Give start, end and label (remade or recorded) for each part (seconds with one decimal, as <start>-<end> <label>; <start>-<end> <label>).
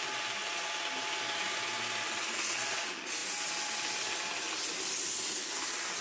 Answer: 0.0-6.0 recorded